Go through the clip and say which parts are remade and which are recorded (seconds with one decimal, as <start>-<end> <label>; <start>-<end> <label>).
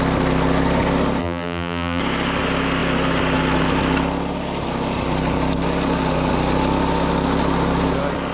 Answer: 0.0-1.2 recorded; 1.2-2.0 remade; 2.0-8.3 recorded